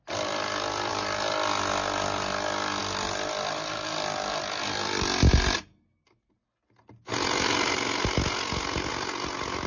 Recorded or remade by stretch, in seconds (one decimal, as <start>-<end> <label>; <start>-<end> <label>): 0.0-9.7 recorded